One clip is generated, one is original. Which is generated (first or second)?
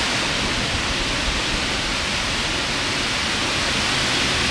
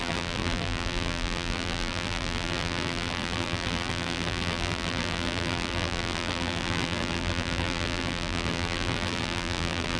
second